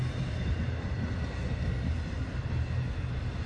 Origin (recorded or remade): recorded